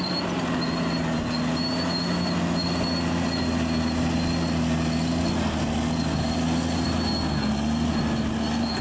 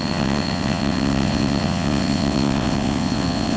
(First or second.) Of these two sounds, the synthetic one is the second